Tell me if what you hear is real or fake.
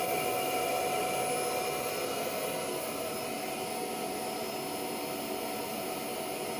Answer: real